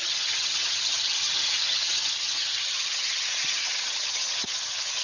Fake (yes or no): yes